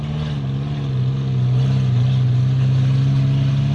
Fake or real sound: real